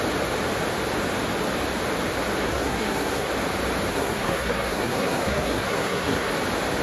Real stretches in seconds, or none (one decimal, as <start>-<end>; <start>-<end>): 0.0-2.4; 3.3-3.9; 6.3-6.8